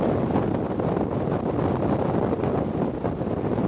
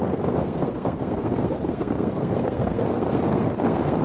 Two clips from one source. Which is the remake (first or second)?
second